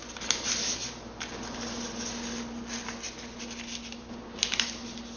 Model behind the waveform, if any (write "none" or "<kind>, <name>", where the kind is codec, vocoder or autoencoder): none